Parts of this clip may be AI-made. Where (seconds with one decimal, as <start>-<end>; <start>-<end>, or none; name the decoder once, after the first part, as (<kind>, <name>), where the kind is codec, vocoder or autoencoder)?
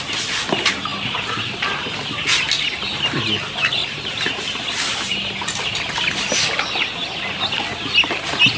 3.8-4.7 (vocoder, BigVGAN v2)